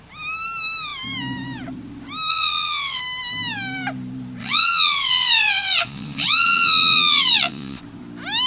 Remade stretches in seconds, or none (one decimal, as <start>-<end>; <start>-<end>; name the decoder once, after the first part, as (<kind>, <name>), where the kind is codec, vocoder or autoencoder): 2.3-3.0 (vocoder, WaveNeXt); 4.4-7.8